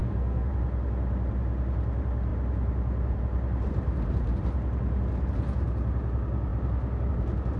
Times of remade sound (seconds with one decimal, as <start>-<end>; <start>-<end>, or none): 0.0-0.5